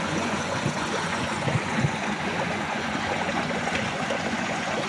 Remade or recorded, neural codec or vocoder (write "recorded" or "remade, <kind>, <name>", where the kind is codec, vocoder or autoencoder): remade, vocoder, Vocos